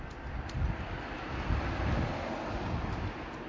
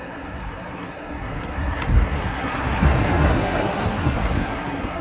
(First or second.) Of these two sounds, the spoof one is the second